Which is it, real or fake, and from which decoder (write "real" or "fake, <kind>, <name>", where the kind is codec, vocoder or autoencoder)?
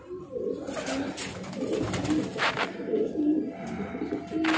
real